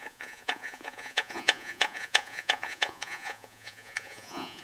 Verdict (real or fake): fake